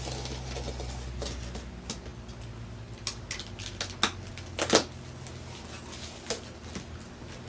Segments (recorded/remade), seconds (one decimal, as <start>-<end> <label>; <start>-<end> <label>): 0.0-7.5 recorded